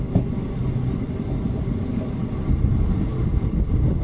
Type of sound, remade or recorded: recorded